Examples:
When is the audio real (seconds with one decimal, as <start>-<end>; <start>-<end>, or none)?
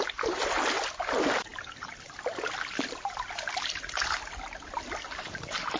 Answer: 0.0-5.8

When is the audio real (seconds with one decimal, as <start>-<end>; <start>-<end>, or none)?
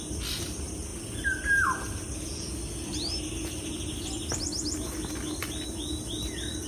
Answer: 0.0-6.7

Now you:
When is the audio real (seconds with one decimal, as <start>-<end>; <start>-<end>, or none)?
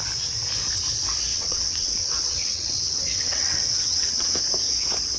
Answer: 0.0-1.3; 4.4-5.2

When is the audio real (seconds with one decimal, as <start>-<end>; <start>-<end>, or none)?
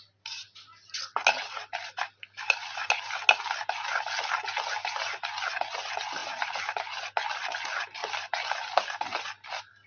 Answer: 0.0-9.9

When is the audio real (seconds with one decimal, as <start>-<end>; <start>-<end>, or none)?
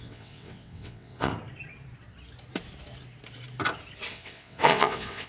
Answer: 1.3-4.1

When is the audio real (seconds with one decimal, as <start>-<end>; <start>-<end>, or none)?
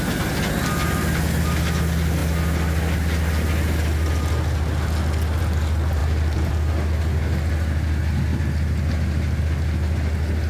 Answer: 0.0-6.0; 6.5-10.5